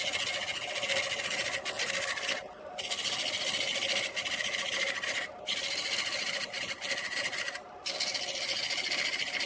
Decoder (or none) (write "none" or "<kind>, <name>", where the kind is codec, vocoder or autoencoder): none